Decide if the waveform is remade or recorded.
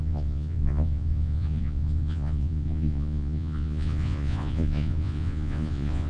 remade